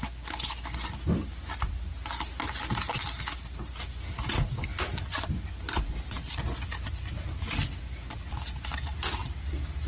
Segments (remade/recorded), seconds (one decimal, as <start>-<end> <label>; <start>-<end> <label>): 0.0-9.9 recorded